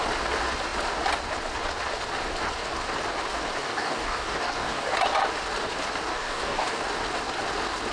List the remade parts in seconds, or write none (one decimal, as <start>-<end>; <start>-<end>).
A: 3.6-4.9; 6.1-6.8